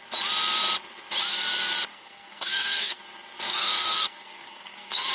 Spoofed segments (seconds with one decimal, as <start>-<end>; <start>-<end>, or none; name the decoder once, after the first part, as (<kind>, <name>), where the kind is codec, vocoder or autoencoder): 1.9-3.0 (codec, SNAC); 3.5-5.1